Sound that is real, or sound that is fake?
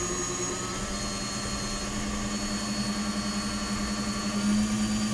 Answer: real